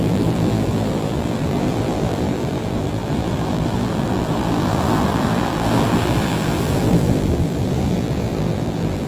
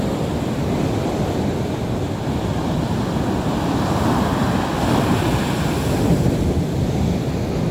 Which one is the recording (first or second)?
second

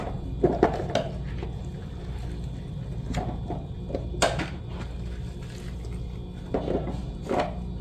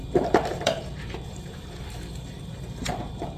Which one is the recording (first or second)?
first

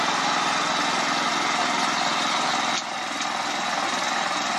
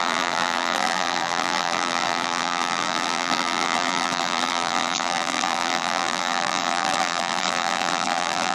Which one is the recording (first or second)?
first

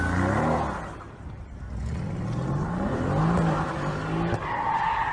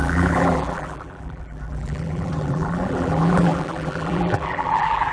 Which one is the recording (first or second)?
first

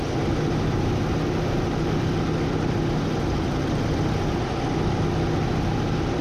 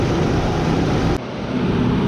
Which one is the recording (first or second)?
first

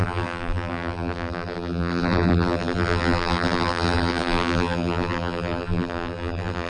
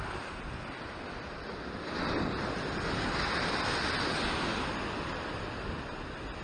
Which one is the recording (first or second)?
second